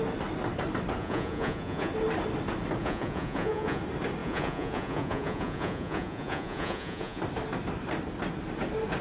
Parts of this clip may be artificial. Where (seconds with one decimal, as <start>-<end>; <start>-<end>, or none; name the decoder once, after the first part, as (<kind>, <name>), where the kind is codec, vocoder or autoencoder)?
1.0-1.9 (vocoder, Vocos); 2.8-3.8; 4.2-7.2